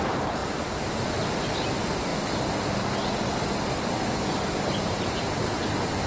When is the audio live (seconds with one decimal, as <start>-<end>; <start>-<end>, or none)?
2.1-4.6